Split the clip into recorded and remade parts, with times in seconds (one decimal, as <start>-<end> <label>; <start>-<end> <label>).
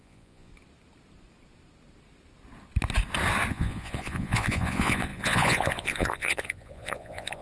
0.0-0.5 remade; 0.5-3.5 recorded; 3.5-7.4 remade